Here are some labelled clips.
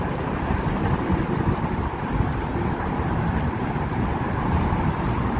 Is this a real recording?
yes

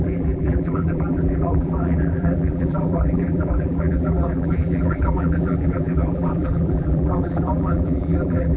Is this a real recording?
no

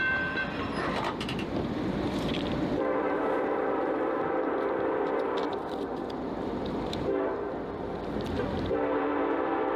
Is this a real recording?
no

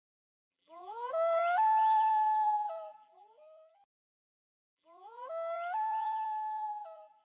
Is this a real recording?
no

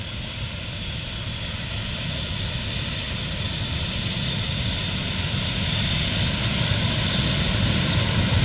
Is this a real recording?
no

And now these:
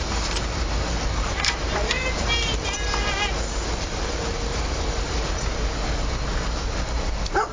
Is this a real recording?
no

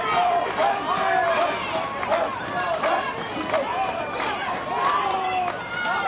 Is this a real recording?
no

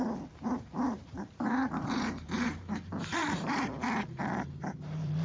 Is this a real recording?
no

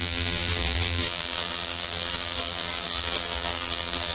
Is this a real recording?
no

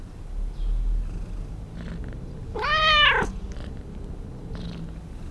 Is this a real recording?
yes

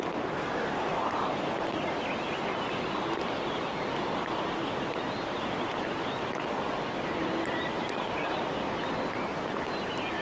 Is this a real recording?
yes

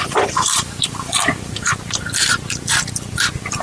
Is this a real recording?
no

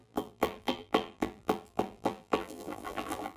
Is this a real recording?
no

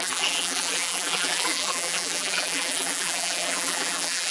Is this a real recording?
no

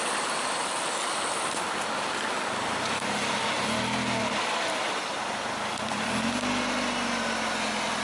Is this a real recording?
yes